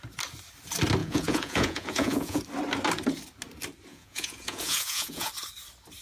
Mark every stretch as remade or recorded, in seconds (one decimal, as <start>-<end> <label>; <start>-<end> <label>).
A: 0.0-1.0 recorded; 1.0-2.4 remade; 2.4-3.9 recorded; 3.9-5.3 remade; 5.3-6.0 recorded